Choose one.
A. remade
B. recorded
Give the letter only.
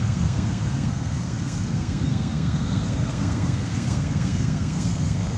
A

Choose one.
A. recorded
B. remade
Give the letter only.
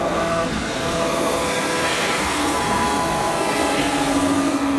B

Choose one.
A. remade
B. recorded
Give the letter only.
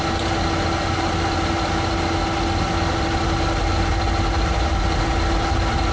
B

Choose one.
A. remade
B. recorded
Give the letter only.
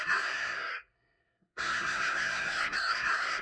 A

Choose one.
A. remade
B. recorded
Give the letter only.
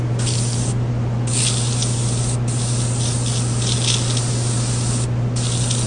B